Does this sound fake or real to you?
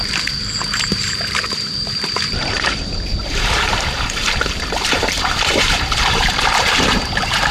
fake